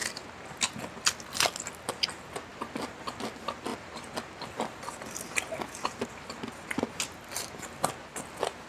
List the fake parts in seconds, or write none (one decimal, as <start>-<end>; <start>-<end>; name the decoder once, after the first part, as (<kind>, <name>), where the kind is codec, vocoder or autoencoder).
none